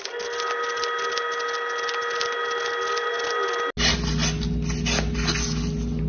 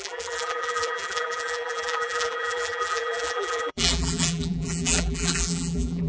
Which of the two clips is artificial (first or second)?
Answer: second